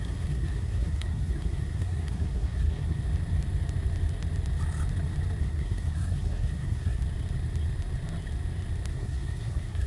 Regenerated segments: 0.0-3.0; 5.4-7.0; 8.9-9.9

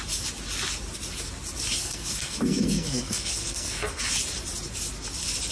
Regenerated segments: 1.8-4.0